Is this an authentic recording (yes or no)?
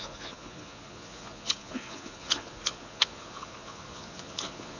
no